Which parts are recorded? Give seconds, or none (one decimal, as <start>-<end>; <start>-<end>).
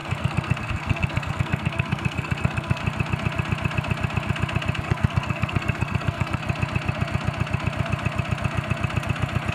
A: 2.8-4.8; 6.4-9.5